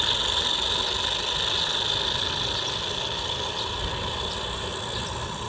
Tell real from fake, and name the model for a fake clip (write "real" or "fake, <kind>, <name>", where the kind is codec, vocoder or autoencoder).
real